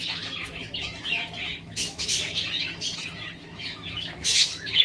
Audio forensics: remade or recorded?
remade